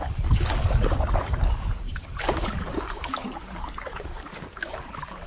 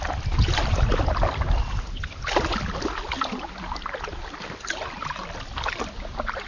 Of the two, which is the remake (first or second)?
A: first